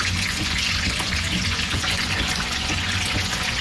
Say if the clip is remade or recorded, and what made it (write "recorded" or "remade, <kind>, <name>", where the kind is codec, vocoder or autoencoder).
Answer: remade, vocoder, Vocos